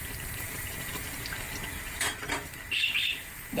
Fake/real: fake